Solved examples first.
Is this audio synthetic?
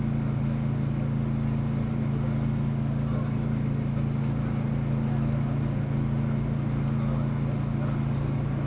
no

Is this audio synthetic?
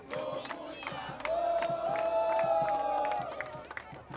no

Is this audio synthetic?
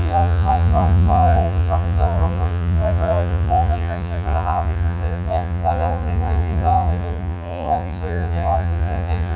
yes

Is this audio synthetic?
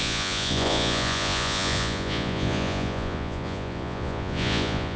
yes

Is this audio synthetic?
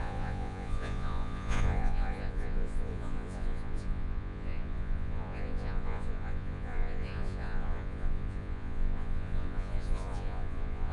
yes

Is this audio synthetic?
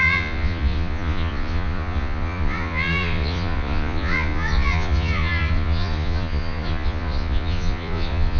yes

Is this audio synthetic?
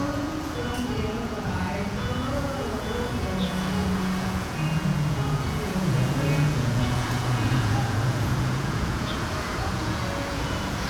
yes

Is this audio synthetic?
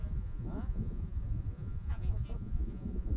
yes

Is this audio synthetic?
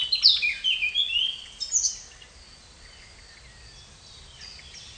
no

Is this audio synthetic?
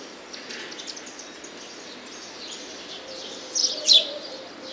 no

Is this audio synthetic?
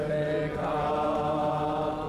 no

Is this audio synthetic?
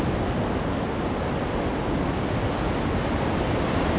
no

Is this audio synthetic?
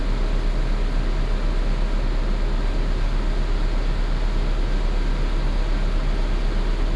no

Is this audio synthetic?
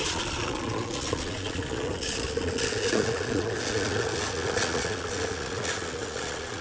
yes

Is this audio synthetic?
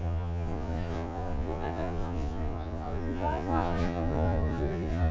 yes